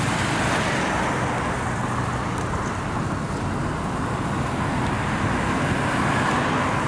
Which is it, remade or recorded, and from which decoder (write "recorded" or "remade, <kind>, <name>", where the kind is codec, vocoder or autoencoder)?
recorded